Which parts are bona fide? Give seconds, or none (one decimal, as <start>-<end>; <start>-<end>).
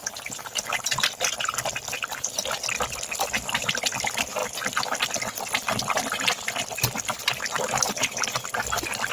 0.0-9.1